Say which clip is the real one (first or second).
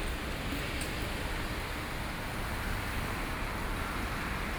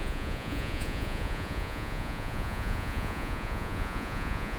first